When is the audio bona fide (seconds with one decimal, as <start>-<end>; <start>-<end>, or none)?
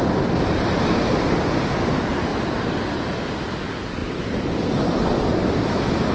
0.0-2.3; 3.3-4.0